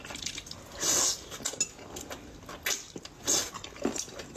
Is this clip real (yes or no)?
yes